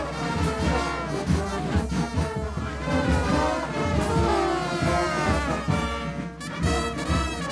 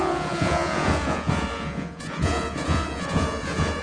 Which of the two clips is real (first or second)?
first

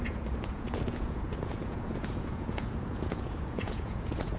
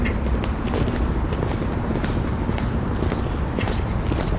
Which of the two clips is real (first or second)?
second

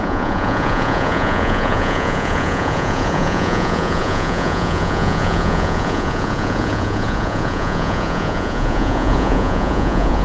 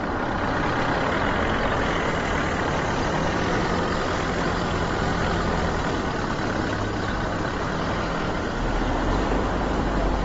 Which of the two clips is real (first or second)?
second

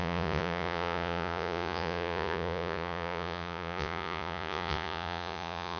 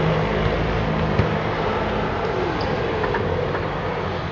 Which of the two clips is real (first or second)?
second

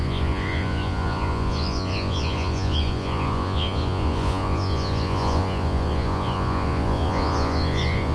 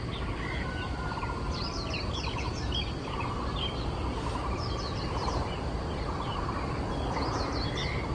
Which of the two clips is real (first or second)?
second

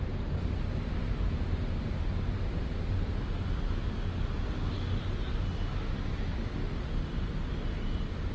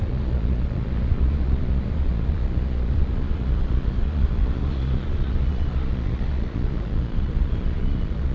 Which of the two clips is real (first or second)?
first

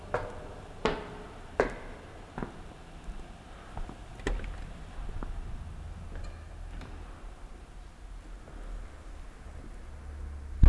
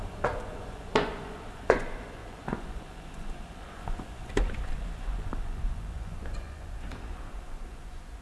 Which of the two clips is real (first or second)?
first